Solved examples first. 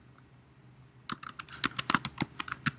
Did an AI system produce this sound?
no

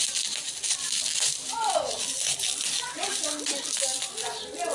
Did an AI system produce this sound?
no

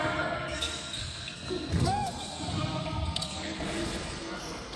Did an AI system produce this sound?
yes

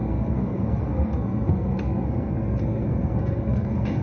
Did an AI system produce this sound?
yes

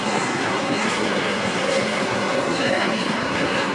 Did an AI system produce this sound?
yes